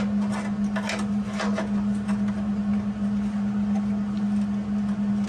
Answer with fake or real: real